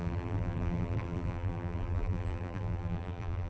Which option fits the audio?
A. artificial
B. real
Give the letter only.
A